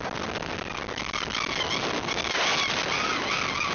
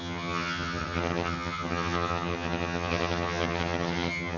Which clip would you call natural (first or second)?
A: first